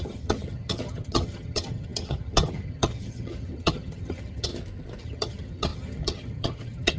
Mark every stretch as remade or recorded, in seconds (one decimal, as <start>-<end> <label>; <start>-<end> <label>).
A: 0.0-4.5 remade; 4.5-5.0 recorded; 5.0-7.0 remade